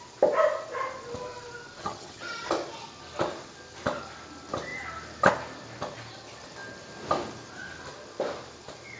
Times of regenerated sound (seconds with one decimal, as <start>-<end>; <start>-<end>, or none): 1.8-2.5